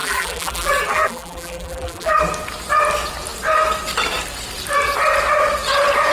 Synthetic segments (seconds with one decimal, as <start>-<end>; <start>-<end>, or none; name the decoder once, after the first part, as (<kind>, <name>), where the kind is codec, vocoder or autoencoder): 0.0-2.2 (vocoder, BigVGAN v2)